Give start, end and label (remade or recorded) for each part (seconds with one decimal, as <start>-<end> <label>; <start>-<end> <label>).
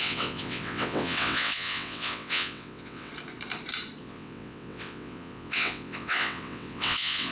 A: 0.0-3.1 remade; 3.1-4.0 recorded; 4.0-7.3 remade